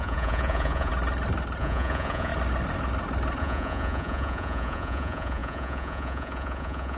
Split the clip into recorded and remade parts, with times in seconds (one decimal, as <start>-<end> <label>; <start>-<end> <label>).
0.0-0.9 remade; 0.9-1.6 recorded; 1.6-2.3 remade; 2.3-3.4 recorded; 3.4-7.0 remade